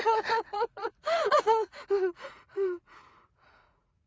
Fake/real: fake